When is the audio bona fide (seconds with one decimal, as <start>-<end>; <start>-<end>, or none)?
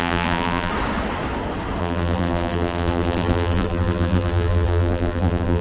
0.7-1.8